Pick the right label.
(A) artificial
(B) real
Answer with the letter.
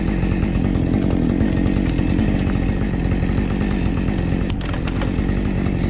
B